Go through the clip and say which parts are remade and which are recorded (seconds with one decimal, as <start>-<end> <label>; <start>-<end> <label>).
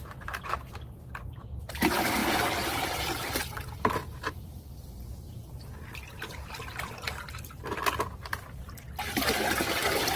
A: 0.0-10.2 recorded